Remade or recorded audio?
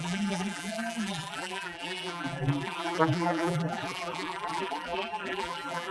remade